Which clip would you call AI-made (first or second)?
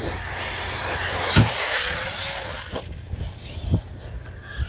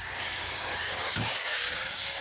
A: second